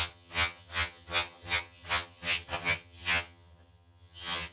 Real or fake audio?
fake